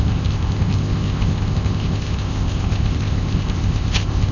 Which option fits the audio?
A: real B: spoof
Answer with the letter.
B